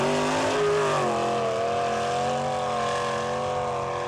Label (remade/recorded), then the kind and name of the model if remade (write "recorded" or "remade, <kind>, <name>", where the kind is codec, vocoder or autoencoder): recorded